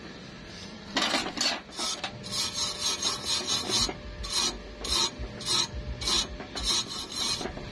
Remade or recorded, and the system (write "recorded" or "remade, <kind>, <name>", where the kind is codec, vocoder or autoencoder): recorded